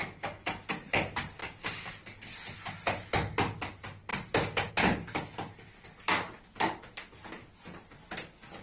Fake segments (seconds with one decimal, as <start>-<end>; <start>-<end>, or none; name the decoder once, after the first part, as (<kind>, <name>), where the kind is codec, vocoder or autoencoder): 1.4-1.9 (codec, DAC)